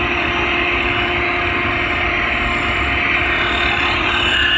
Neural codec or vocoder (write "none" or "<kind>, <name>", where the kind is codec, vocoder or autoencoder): none